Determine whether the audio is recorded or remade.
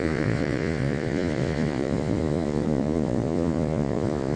remade